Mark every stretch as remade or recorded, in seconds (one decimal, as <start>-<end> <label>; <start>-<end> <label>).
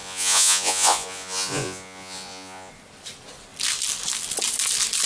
0.0-2.7 remade; 2.7-5.1 recorded